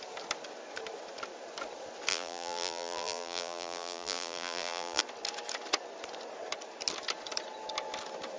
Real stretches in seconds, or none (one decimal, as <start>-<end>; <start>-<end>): 0.0-2.1; 5.0-8.4